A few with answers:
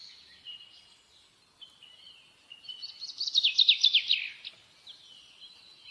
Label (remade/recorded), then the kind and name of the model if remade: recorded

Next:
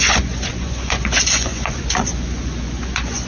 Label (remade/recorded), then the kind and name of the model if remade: remade, vocoder, Vocos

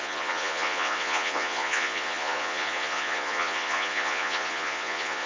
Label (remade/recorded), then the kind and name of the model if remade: remade, vocoder, Vocos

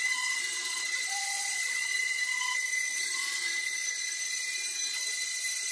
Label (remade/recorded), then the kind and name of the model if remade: remade, vocoder, Vocos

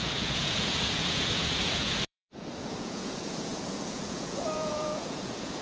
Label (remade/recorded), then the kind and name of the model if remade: remade, vocoder, Vocos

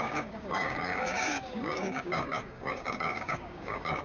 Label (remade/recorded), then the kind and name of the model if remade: remade, codec, DAC